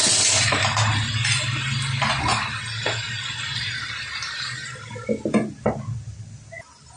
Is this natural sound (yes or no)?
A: yes